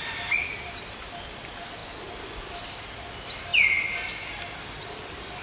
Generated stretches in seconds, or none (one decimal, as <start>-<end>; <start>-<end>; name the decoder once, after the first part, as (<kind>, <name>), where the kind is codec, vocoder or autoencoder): 0.0-1.8 (vocoder, BigVGAN v2); 2.3-3.5; 4.9-5.4